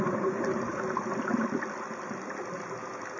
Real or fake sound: real